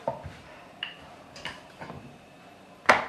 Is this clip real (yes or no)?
no